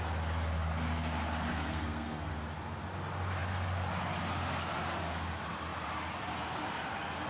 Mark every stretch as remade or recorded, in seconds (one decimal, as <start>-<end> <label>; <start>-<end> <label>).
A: 0.0-1.5 recorded; 1.5-2.3 remade; 2.3-7.3 recorded